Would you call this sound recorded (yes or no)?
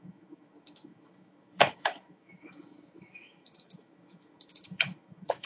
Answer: no